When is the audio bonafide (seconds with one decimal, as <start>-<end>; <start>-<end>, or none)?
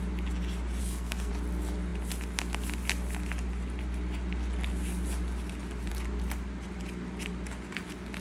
0.0-0.8; 1.3-8.2